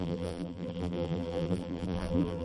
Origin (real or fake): fake